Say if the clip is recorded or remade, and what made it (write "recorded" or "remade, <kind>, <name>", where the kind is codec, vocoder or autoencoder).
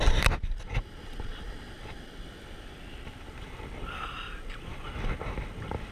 recorded